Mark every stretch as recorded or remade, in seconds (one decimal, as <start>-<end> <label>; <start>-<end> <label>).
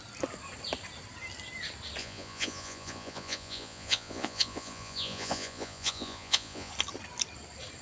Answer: 0.0-2.0 recorded; 2.0-6.7 remade; 6.7-7.8 recorded